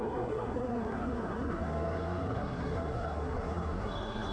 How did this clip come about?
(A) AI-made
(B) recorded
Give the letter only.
A